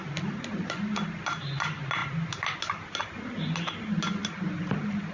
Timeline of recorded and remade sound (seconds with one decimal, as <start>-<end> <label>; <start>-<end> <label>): 0.0-5.1 recorded